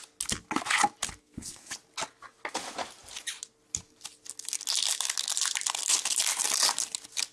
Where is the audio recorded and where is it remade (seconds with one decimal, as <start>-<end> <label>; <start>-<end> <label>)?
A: 0.0-1.2 recorded; 1.2-1.7 remade; 1.7-7.3 recorded